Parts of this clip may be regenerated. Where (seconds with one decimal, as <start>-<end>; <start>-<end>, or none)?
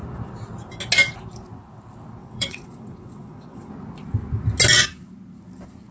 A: 2.2-3.7